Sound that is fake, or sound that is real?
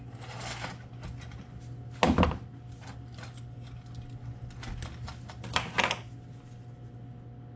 real